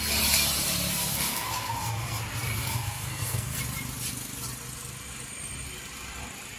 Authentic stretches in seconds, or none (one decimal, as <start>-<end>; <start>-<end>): 0.0-1.0; 2.2-2.6; 3.6-6.6